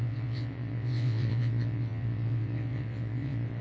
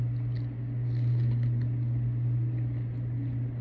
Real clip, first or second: second